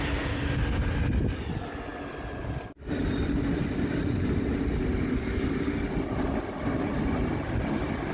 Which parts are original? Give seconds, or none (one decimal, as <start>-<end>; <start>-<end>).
0.0-8.1